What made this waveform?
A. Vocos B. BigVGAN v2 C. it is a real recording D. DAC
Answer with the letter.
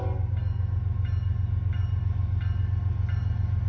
C